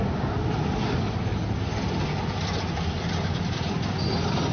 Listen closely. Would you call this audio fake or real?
real